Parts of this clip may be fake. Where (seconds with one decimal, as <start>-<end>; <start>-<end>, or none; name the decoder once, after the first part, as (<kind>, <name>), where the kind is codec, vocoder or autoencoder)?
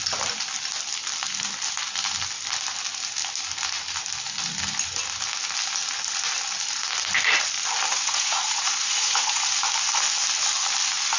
7.9-9.4 (vocoder, Vocos)